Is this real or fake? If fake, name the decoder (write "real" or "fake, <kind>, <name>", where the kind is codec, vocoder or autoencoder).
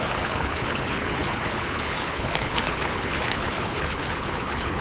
fake, codec, HILCodec